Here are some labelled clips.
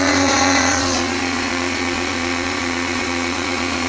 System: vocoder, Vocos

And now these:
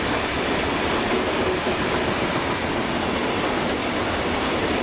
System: none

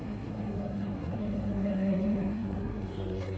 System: codec, SNAC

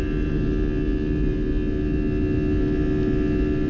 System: none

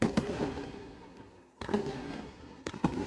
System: codec, SNAC